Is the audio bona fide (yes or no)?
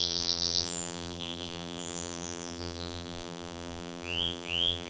no